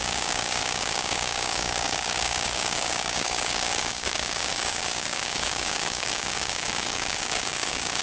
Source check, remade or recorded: remade